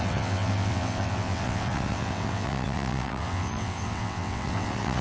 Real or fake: fake